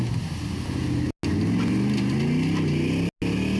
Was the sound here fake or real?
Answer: real